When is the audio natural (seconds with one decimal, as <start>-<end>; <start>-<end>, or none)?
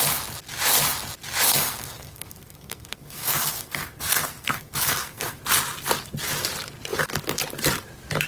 0.0-1.5; 5.4-8.3